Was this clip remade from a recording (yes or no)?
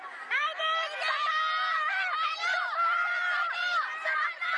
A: yes